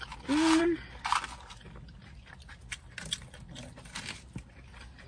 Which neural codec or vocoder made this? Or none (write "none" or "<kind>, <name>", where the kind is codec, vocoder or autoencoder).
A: none